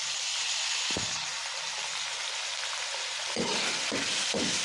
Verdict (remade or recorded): recorded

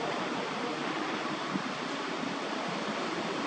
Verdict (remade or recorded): recorded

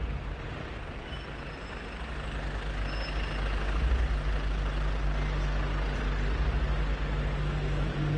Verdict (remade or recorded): recorded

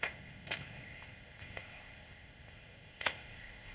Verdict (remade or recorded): remade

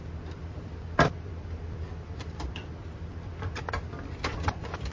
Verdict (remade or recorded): recorded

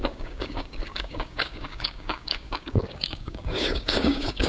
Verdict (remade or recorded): remade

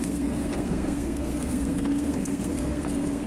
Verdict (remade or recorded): remade